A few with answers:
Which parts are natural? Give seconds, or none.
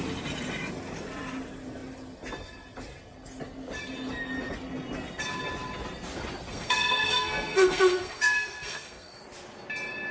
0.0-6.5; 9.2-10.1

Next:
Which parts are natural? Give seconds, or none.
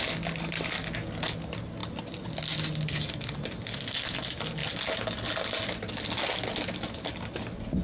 0.0-7.8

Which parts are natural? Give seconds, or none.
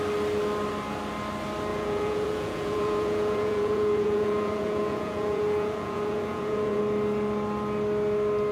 0.0-1.7; 6.8-8.5